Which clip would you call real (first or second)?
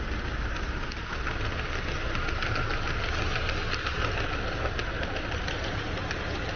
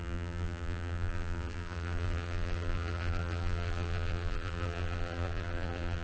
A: first